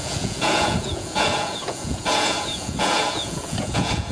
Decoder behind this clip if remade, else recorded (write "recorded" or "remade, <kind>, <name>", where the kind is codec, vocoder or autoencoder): remade, vocoder, Vocos